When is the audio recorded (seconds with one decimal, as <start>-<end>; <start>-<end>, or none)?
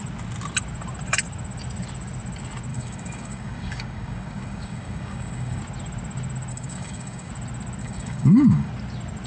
0.0-2.7; 5.6-6.5; 7.3-7.8; 8.7-9.3